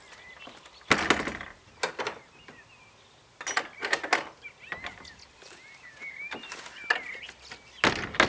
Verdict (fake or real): real